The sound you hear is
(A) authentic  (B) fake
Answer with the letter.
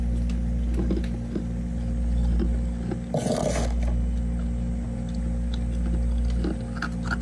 A